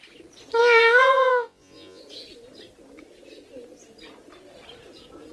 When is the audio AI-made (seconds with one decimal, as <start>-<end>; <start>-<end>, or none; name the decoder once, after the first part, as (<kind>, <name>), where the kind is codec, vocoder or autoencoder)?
0.6-2.0 (vocoder, Vocos)